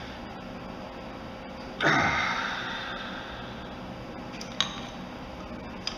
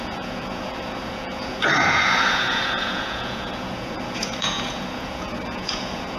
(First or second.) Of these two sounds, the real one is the first